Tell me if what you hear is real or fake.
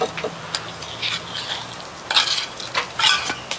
real